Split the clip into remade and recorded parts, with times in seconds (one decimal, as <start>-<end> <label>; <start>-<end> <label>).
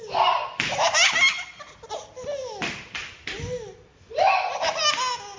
0.0-5.4 recorded